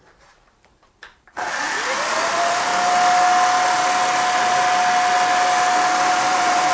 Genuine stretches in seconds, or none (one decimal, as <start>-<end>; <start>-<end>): 2.7-6.1